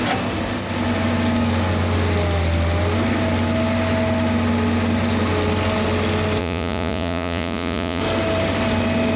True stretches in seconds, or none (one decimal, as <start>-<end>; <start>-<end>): 0.0-6.4; 8.0-9.2